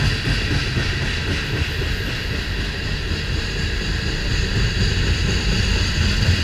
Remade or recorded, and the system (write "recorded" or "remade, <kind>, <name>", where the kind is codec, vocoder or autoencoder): recorded